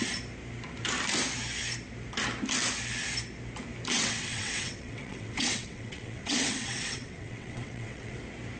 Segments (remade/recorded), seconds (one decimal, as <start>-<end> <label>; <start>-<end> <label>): 0.0-3.9 recorded; 3.9-8.2 remade; 8.2-8.6 recorded